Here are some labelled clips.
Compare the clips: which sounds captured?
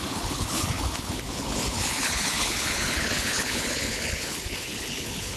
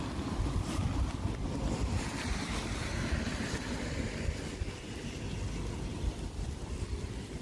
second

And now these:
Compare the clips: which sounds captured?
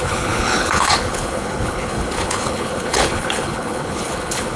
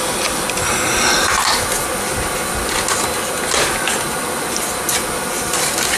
second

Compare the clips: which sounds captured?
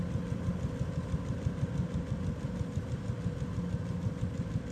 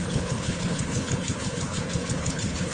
first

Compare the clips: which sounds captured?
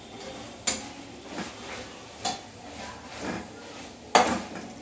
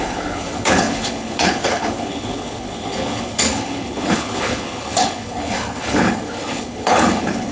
first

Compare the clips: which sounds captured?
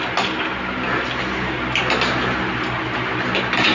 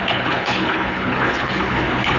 first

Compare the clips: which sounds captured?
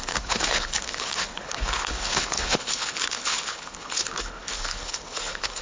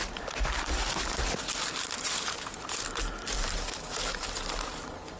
second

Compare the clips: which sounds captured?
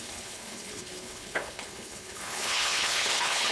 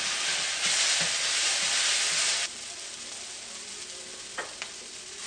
second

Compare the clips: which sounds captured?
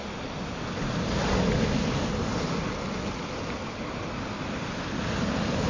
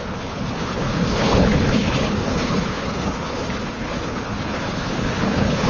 first